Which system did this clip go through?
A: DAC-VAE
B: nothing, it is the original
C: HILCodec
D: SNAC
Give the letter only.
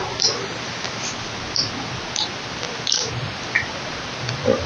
B